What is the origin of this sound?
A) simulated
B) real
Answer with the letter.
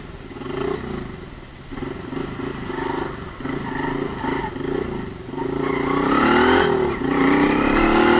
B